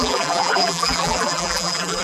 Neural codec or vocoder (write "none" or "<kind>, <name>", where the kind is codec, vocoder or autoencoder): vocoder, BigVGAN v2